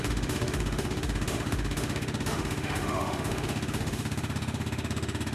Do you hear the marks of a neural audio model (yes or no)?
yes